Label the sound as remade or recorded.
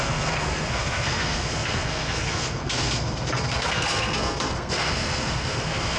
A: remade